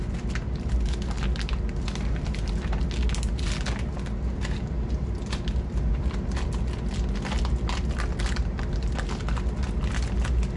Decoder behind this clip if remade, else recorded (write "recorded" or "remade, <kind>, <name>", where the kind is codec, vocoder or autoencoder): recorded